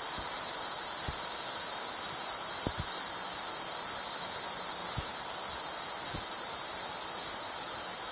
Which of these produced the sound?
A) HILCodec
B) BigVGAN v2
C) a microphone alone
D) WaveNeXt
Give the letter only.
C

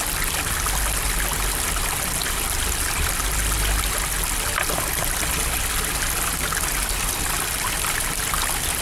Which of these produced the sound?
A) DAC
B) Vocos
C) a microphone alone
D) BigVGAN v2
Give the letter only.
C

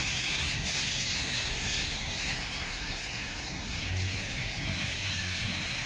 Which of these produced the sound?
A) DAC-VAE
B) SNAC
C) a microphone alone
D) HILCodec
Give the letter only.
B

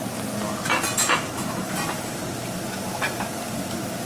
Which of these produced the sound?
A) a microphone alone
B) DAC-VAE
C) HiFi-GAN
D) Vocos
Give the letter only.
A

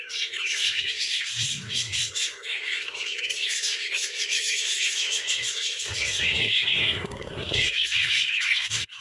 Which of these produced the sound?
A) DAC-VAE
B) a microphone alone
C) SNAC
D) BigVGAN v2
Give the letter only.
C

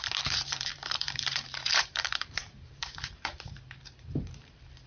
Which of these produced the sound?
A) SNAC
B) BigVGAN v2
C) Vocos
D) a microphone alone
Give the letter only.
B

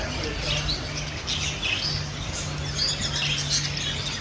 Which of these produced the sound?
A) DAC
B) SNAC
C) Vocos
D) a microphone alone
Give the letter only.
D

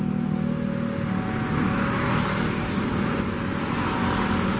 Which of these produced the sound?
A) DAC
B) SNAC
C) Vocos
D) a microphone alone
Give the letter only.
D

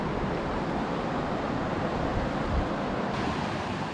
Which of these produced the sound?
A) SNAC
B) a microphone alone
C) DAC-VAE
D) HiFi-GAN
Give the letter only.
B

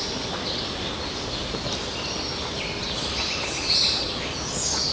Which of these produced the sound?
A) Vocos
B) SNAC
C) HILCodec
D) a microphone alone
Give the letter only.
D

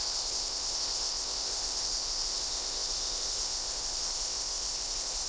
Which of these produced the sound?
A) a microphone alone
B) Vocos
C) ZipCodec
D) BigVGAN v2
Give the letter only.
C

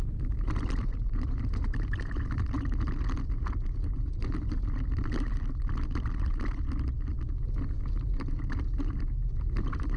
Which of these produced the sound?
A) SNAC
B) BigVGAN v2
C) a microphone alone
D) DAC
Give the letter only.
C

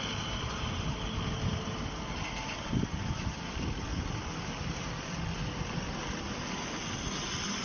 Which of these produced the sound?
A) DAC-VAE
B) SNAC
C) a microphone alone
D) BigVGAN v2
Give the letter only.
D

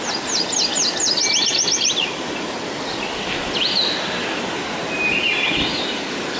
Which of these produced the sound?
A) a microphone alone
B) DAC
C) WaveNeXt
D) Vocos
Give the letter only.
A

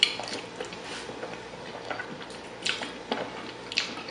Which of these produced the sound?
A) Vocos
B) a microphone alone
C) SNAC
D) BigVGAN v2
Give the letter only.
B